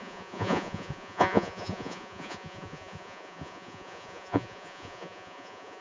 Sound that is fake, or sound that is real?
fake